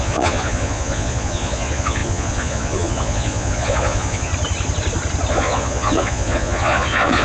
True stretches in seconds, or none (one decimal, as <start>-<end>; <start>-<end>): 4.3-5.3